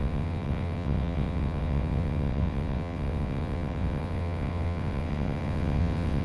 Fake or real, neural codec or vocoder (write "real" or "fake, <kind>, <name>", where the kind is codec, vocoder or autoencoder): fake, vocoder, WaveNeXt